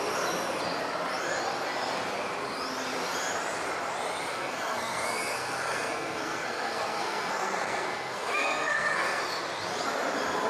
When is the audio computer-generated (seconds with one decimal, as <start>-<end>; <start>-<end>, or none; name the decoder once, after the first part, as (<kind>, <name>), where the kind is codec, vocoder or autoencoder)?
4.3-9.2 (codec, SNAC)